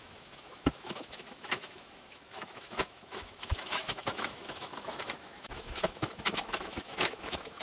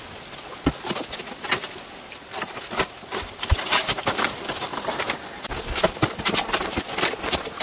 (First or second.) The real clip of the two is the second